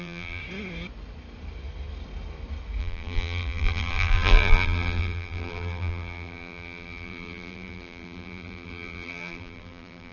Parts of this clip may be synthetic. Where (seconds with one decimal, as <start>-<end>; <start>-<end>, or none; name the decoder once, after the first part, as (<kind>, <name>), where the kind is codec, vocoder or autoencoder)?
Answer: 0.0-0.4 (vocoder, BigVGAN v2); 2.8-10.1